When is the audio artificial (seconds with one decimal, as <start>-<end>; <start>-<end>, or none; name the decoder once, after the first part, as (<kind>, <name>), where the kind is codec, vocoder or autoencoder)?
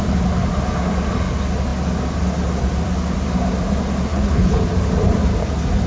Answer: 4.1-4.6 (codec, HILCodec)